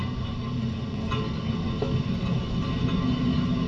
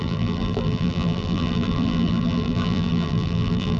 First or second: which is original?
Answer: first